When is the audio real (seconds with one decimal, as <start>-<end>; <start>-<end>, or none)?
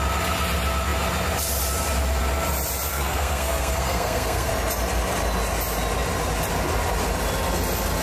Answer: 0.0-2.9; 4.5-8.0